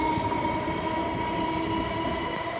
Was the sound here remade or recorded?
recorded